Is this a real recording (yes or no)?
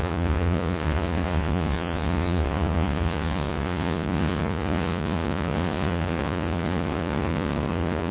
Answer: no